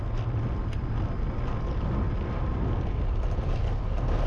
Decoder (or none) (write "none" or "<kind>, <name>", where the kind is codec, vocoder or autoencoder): none